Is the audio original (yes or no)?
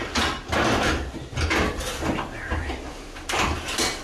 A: yes